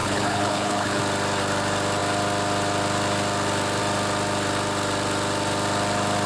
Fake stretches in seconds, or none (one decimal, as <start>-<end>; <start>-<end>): 0.0-1.0